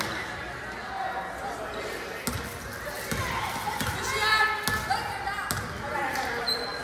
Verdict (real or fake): real